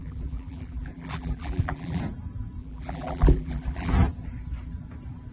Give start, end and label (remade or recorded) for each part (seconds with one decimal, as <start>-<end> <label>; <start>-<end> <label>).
0.0-2.0 remade; 2.0-2.6 recorded; 2.6-3.9 remade; 3.9-5.3 recorded